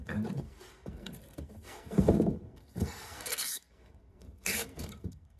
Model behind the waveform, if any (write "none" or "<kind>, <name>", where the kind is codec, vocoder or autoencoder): codec, SNAC